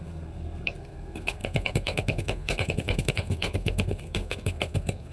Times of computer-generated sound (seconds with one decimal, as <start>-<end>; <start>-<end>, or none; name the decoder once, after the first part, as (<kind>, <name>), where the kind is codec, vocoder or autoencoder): 0.0-5.1 (codec, SNAC)